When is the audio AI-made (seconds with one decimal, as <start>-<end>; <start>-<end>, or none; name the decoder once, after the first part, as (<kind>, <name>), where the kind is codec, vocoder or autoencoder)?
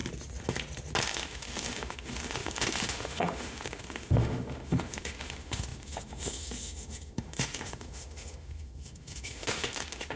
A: 1.0-10.2 (autoencoder, DAC-VAE)